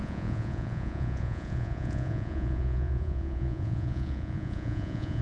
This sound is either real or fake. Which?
fake